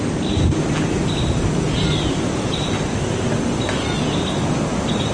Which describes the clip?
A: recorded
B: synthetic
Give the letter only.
A